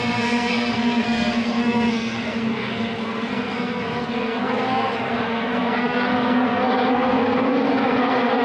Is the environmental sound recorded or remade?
remade